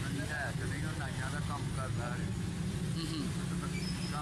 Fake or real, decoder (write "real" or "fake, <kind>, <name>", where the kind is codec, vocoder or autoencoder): real